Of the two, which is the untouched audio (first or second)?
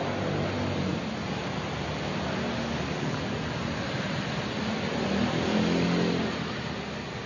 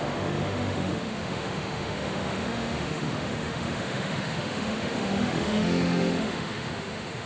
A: first